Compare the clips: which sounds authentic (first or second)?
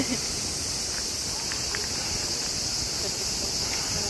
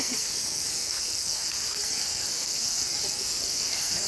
first